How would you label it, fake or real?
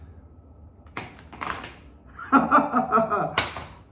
real